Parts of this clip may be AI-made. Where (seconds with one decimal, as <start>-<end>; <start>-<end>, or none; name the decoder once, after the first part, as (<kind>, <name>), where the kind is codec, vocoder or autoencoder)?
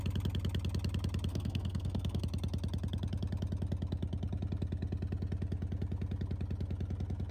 1.3-2.2 (codec, SNAC)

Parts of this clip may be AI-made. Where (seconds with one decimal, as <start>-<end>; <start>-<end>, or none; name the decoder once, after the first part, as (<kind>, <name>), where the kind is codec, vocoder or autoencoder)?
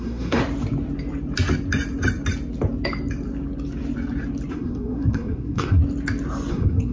0.0-0.4 (codec, SNAC); 4.5-5.8; 6.5-6.9